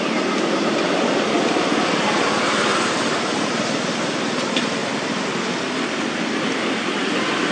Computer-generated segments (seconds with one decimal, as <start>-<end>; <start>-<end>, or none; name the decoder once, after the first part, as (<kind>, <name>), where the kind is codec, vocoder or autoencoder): 0.0-7.5 (vocoder, BigVGAN v2)

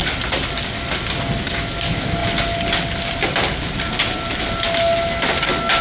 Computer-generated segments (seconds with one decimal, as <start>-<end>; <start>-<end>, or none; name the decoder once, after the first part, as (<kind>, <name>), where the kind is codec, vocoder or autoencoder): none

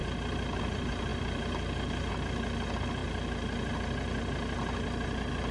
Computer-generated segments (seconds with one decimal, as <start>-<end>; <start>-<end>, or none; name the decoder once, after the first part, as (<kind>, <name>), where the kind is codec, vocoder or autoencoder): 0.0-0.6 (vocoder, BigVGAN v2); 1.1-2.1; 3.0-3.7

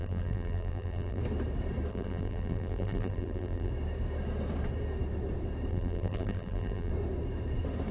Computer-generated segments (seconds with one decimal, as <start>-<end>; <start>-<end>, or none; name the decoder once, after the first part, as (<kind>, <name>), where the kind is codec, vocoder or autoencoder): 0.0-1.2 (vocoder, BigVGAN v2); 1.9-3.7; 5.7-6.9

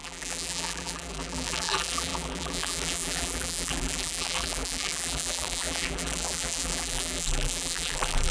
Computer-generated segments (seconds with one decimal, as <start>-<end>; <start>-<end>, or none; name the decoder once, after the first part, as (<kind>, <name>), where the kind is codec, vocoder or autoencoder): 0.0-8.3 (vocoder, BigVGAN v2)